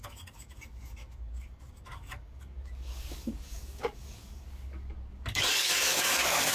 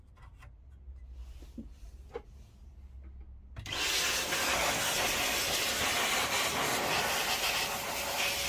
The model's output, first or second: first